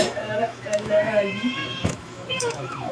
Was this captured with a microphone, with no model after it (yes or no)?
no